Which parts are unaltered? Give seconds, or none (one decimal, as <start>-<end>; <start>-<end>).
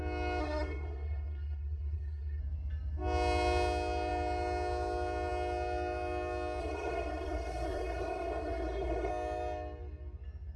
0.0-0.4; 2.4-6.6; 9.1-10.6